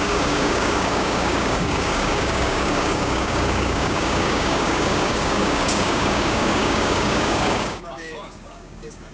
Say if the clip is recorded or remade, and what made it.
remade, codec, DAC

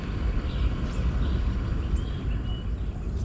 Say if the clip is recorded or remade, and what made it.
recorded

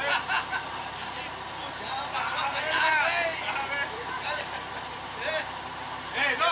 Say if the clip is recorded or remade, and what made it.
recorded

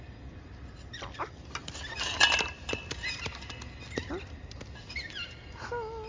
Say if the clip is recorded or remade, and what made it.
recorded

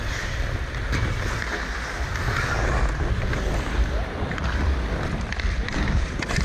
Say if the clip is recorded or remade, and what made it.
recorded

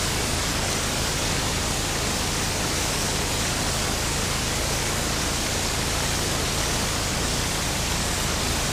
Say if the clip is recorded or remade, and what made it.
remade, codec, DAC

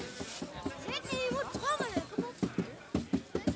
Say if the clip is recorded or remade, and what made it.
recorded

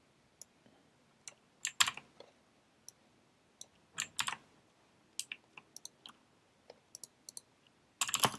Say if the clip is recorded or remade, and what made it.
recorded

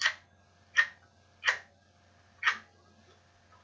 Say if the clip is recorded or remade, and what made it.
recorded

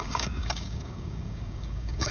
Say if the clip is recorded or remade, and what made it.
remade, codec, DAC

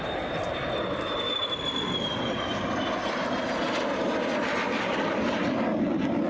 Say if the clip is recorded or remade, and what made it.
recorded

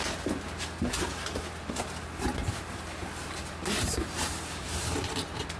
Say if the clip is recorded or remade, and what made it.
recorded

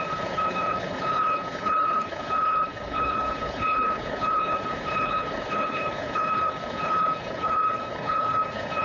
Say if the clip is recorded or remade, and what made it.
remade, codec, HILCodec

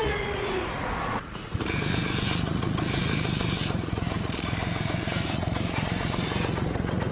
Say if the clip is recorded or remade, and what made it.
remade, vocoder, Vocos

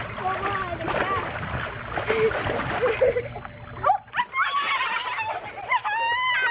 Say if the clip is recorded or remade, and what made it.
recorded